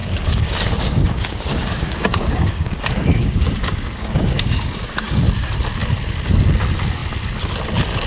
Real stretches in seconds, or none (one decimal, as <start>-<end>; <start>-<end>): 4.9-8.1